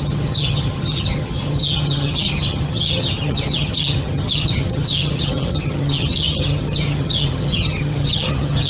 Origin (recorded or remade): remade